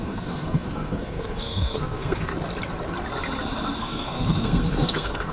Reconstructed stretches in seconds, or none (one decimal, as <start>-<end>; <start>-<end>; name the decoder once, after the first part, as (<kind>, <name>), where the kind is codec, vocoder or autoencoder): 0.0-2.3 (codec, SNAC); 3.8-5.3